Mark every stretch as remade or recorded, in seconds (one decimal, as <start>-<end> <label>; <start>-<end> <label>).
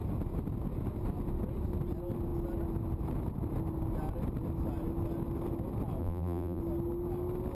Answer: 0.0-6.0 recorded; 6.0-6.6 remade; 6.6-7.5 recorded